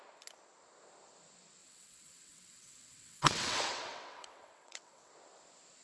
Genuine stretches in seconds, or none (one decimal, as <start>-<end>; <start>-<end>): 0.0-1.6; 5.1-5.8